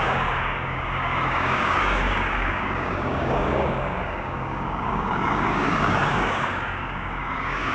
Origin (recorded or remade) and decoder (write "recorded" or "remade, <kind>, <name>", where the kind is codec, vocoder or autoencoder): remade, codec, DAC